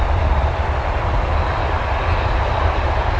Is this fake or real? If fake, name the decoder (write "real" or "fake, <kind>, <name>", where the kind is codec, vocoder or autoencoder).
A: real